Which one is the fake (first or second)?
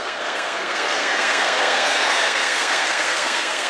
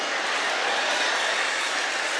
first